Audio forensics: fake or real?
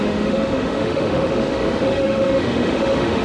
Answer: fake